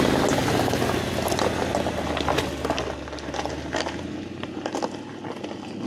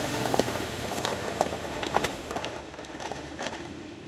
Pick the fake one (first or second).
second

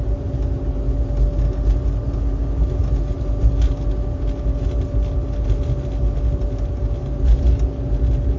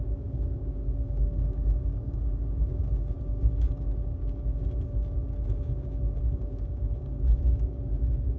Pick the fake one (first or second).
second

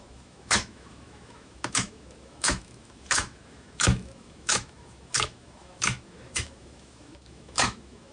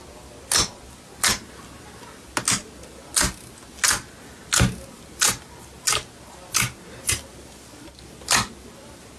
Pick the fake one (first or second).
first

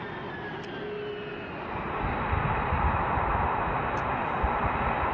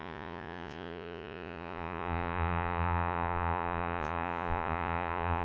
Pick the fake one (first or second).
second